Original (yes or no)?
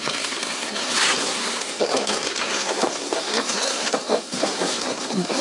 no